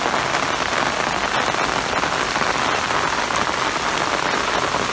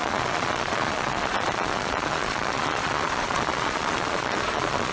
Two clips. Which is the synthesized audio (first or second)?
second